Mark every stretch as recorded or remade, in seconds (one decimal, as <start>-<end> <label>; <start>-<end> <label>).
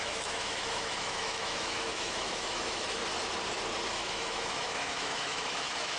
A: 0.0-3.0 remade; 3.0-3.9 recorded; 3.9-6.0 remade